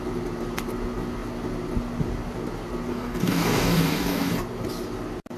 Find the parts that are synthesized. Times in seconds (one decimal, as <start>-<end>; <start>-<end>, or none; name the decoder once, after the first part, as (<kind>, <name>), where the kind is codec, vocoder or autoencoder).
2.9-4.3 (codec, DAC)